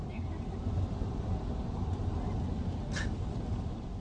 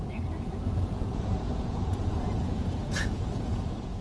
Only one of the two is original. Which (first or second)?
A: first